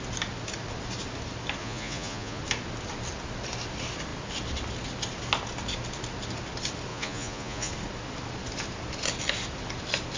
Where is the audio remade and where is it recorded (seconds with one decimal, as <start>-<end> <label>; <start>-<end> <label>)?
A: 0.0-1.6 recorded; 1.6-2.4 remade; 2.4-6.9 recorded; 6.9-7.7 remade; 7.7-10.2 recorded